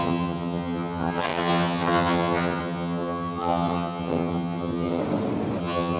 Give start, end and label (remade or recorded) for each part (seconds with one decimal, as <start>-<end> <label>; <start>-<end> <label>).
0.0-5.0 remade; 5.0-5.6 recorded; 5.6-6.0 remade